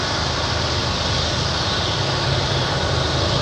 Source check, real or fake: real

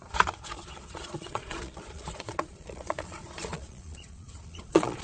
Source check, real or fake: fake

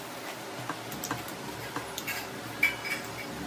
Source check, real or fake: real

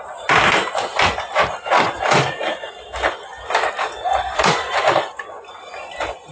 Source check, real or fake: real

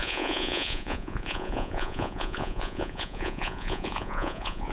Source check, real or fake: fake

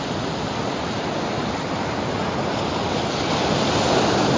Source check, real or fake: real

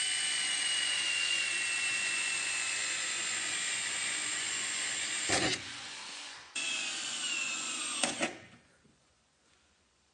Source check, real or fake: fake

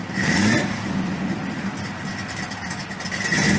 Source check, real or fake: fake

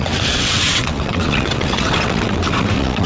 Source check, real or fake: fake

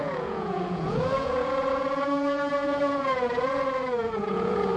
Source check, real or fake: fake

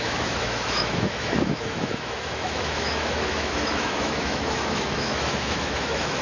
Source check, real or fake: fake